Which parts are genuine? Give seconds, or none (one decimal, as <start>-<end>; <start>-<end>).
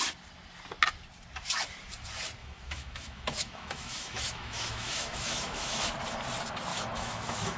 0.0-2.4; 5.9-6.7